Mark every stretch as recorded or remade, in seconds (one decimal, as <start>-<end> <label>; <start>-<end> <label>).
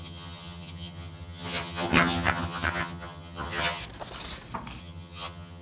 0.0-3.8 remade; 3.8-4.8 recorded; 4.8-5.6 remade